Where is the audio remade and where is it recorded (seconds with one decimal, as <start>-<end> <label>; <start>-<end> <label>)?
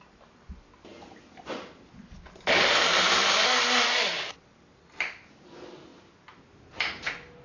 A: 0.0-7.4 recorded